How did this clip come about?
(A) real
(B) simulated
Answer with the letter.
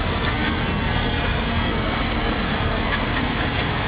B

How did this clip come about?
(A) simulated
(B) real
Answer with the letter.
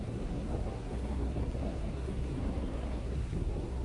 A